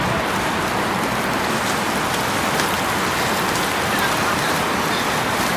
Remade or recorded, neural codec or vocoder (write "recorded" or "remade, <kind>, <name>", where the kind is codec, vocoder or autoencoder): recorded